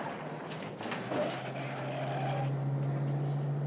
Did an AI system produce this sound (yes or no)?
no